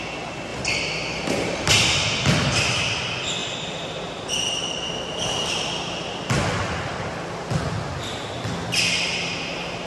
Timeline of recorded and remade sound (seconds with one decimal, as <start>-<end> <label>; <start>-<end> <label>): 0.0-0.5 recorded; 0.5-1.7 remade; 1.7-3.4 recorded; 3.4-7.5 remade; 7.5-9.9 recorded

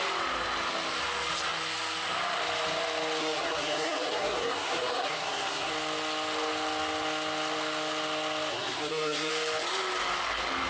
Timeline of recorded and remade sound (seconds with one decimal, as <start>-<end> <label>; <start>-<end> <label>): 0.0-3.2 recorded; 3.2-5.7 remade; 5.7-8.5 recorded; 8.5-9.3 remade; 9.3-10.7 recorded

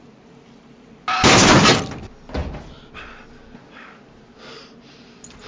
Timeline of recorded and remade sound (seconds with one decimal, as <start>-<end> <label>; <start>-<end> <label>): 0.0-5.5 recorded

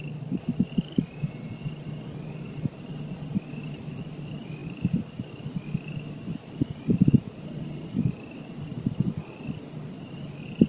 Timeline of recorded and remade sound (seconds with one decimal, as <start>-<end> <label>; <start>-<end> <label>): 0.0-4.6 recorded; 4.6-5.1 remade; 5.1-6.3 recorded; 6.3-7.1 remade; 7.1-8.7 recorded; 8.7-9.3 remade; 9.3-9.8 recorded; 9.8-10.7 remade

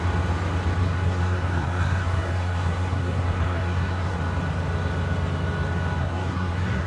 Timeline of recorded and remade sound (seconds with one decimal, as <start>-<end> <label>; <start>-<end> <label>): 0.0-0.8 recorded; 0.8-4.2 remade; 4.2-6.0 recorded; 6.0-6.9 remade

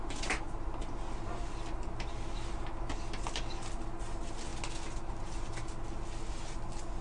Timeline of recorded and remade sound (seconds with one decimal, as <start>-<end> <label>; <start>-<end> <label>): 0.0-7.0 recorded